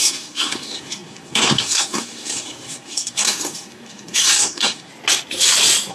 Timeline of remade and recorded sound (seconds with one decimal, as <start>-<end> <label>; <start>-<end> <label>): 0.0-4.9 remade; 4.9-5.9 recorded